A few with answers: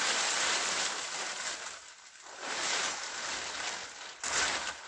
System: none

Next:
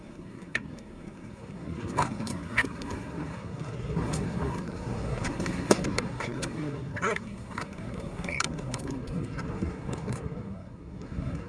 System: codec, SNAC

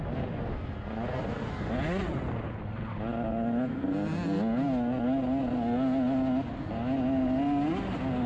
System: none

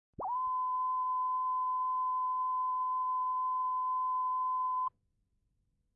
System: none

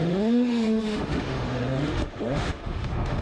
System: autoencoder, DAC-VAE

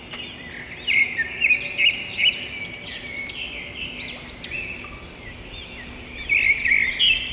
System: none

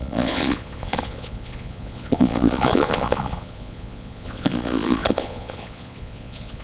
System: vocoder, Vocos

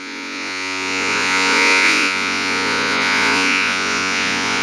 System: vocoder, Vocos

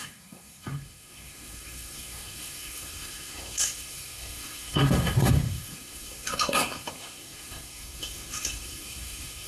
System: codec, SNAC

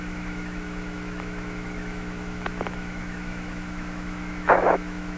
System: autoencoder, DAC-VAE